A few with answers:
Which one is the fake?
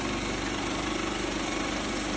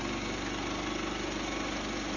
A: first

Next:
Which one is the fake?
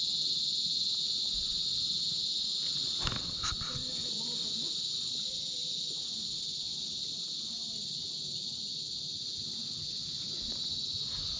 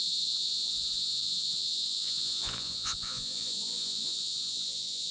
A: second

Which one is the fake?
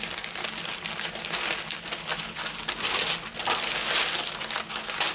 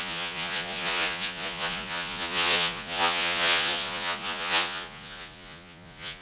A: second